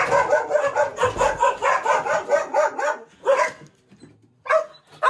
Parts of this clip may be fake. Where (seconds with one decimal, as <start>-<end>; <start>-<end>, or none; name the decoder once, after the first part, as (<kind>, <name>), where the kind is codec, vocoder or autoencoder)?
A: none

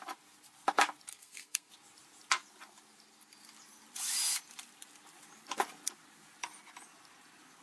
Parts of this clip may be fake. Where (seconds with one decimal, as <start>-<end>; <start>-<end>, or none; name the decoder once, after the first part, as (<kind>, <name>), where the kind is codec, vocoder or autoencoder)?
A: 1.1-1.7 (codec, SNAC)

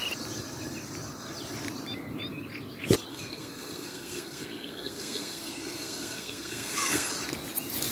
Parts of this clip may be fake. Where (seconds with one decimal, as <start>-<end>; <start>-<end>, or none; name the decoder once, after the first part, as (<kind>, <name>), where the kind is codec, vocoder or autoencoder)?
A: 3.1-7.1 (codec, SNAC)

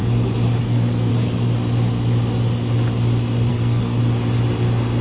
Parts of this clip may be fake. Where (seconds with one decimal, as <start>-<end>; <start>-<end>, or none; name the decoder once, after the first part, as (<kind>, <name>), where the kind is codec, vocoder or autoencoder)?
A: 0.6-1.1 (codec, SNAC); 3.5-4.0

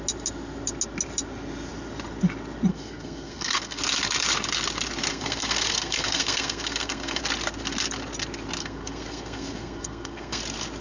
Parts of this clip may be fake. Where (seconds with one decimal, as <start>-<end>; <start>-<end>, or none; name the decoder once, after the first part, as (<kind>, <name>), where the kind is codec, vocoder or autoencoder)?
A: 2.7-3.8 (codec, SNAC); 5.1-7.2; 8.6-10.4

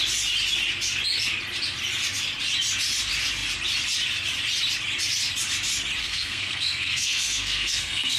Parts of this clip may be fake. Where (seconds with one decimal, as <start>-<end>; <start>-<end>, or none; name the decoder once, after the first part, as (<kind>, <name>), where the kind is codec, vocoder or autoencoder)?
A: 6.0-8.2 (codec, SNAC)